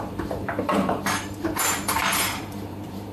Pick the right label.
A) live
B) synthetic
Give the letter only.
B